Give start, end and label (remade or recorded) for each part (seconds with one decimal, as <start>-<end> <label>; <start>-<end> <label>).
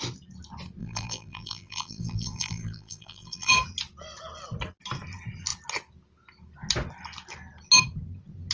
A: 0.0-0.8 recorded; 0.8-3.5 remade; 3.5-8.5 recorded